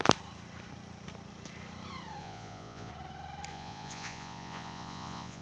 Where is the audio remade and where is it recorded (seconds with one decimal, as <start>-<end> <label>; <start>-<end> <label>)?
0.0-2.2 recorded; 2.2-2.9 remade; 2.9-3.5 recorded; 3.5-5.4 remade